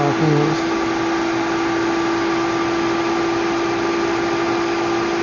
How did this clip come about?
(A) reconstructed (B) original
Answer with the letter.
B